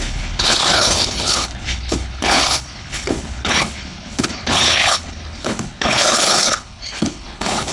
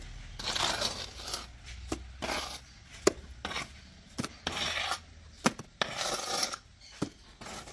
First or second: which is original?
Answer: second